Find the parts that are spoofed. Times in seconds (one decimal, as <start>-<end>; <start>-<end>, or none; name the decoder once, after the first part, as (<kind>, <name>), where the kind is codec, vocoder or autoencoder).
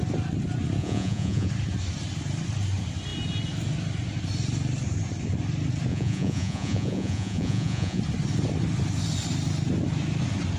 0.8-1.5 (vocoder, Vocos); 5.9-8.0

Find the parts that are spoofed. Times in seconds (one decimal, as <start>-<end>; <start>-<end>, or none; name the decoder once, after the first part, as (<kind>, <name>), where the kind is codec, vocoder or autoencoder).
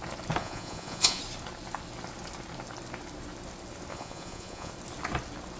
0.4-1.2 (vocoder, Vocos); 3.9-4.7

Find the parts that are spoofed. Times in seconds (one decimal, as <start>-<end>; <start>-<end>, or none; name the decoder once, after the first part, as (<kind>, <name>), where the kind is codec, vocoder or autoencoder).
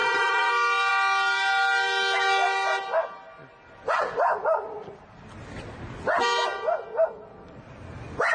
0.0-0.5 (vocoder, Vocos)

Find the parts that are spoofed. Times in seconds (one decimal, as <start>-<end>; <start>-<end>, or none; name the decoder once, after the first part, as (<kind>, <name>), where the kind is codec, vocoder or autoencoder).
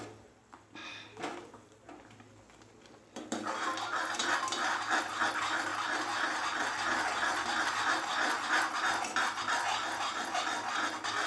0.0-0.8 (vocoder, BigVGAN v2); 1.9-4.2; 5.3-5.7; 7.6-8.1